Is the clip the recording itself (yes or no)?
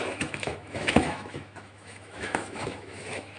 no